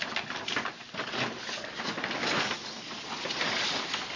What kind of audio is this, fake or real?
real